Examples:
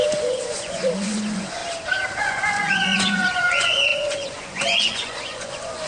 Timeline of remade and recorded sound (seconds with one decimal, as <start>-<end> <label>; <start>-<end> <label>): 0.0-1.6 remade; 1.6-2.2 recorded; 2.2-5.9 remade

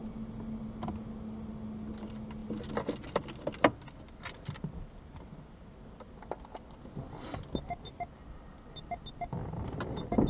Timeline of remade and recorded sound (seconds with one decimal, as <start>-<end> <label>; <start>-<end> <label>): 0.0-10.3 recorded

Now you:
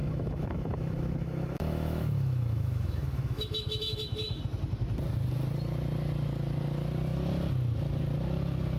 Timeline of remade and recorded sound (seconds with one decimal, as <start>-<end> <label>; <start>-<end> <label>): 0.0-4.4 remade; 4.4-8.8 recorded